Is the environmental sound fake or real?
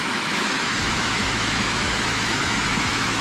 fake